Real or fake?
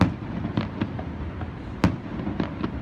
real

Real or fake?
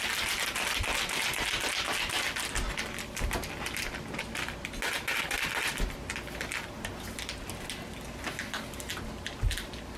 real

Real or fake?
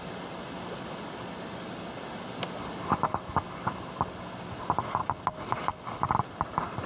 real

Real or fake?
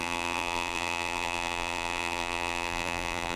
fake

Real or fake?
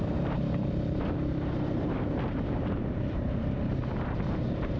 fake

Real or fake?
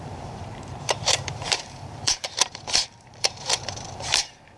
fake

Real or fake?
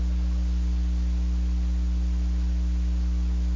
real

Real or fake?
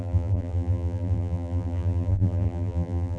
fake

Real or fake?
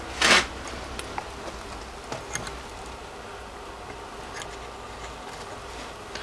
real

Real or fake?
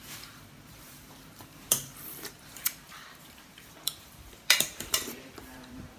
fake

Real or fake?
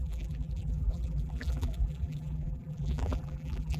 fake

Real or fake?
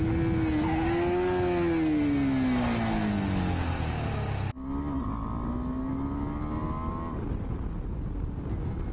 real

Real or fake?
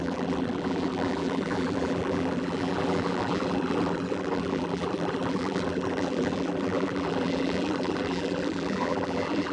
fake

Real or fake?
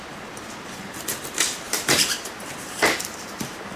fake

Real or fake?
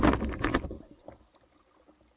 fake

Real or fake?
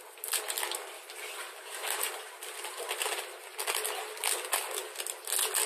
real